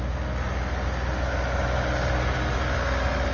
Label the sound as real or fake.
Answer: real